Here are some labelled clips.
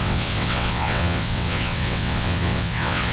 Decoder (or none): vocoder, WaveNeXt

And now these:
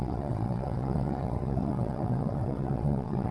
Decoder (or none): vocoder, WaveNeXt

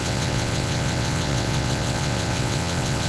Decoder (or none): vocoder, WaveNeXt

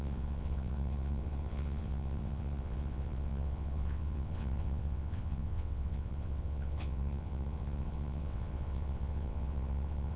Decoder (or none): vocoder, WaveNeXt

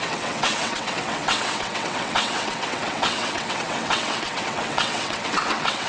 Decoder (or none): vocoder, WaveNeXt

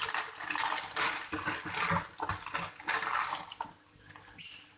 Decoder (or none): none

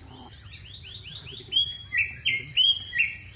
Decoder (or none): none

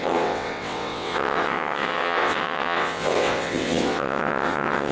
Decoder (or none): vocoder, WaveNeXt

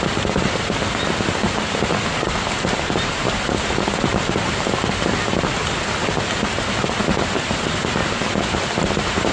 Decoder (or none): none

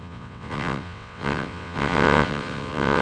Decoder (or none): vocoder, WaveNeXt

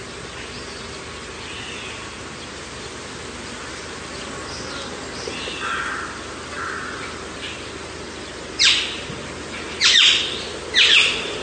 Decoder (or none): none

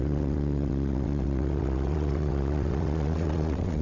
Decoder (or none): vocoder, WaveNeXt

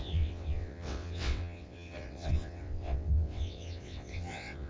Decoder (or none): vocoder, WaveNeXt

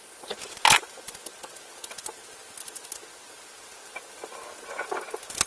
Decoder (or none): none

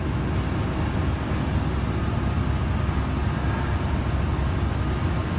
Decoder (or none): none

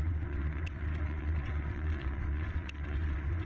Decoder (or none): vocoder, WaveNeXt